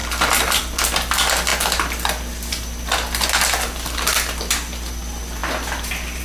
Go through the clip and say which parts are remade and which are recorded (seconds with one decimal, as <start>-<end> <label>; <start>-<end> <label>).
0.0-6.2 recorded